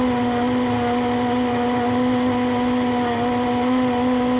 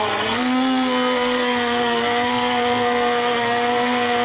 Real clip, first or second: first